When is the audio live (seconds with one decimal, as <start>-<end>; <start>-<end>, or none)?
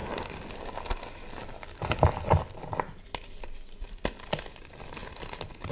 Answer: 0.0-5.7